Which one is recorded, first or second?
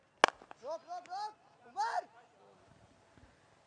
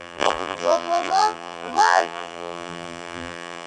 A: first